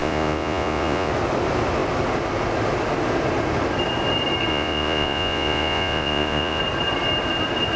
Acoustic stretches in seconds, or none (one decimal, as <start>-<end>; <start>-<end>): 1.1-4.5; 6.6-7.8